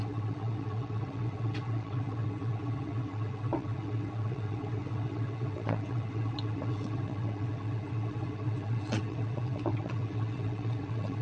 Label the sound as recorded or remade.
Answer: remade